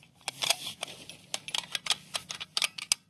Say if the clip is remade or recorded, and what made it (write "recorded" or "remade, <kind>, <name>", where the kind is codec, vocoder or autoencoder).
recorded